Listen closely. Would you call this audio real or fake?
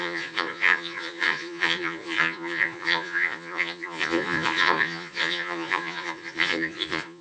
fake